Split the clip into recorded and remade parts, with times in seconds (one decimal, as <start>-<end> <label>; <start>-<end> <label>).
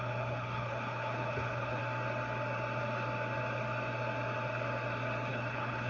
0.0-1.8 remade; 1.8-5.3 recorded; 5.3-5.9 remade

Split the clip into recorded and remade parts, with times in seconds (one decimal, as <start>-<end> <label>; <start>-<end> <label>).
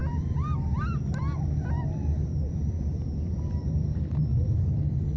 0.0-5.2 recorded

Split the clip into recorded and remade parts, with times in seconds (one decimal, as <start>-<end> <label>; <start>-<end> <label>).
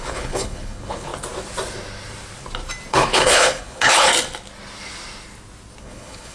0.0-1.1 remade; 1.1-2.9 recorded; 2.9-4.1 remade; 4.1-5.8 recorded; 5.8-6.3 remade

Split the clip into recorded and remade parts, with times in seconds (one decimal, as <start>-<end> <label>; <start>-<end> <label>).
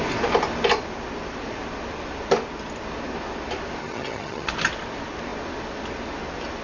0.0-3.8 recorded; 3.8-4.5 remade; 4.5-6.6 recorded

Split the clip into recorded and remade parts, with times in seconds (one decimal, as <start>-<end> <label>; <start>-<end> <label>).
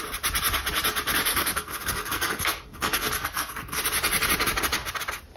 0.0-1.3 recorded; 1.3-3.8 remade; 3.8-5.4 recorded